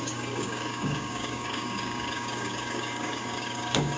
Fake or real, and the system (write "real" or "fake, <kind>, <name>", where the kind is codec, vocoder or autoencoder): fake, codec, DAC